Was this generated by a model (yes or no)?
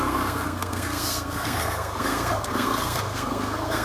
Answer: yes